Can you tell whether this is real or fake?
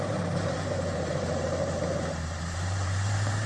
fake